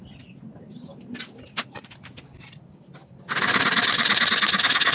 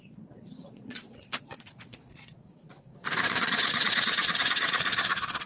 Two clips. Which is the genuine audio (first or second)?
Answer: first